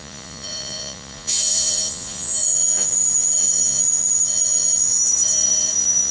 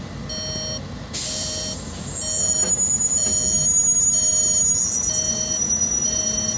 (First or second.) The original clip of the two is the second